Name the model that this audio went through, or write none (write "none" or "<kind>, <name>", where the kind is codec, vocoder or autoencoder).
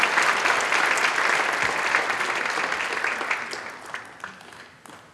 none